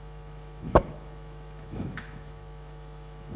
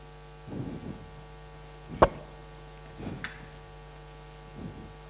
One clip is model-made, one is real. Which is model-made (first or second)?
first